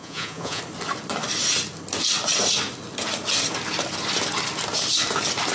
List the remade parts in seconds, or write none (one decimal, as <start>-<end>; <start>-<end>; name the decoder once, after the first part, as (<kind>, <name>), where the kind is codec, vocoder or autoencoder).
0.0-0.6 (vocoder, Vocos)